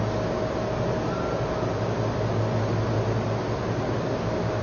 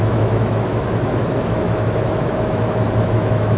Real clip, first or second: first